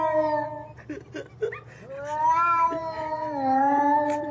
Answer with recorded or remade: recorded